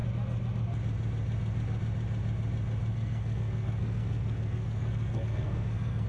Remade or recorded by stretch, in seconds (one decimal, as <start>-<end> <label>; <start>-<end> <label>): 0.0-2.9 recorded; 2.9-6.1 remade